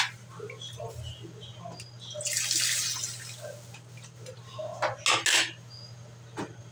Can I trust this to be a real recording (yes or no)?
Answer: yes